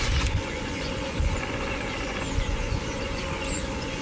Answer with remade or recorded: remade